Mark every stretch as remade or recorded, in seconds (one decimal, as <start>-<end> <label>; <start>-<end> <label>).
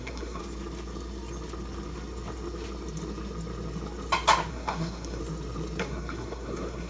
0.0-0.4 remade; 0.4-4.5 recorded; 4.5-5.2 remade; 5.2-5.8 recorded; 5.8-6.9 remade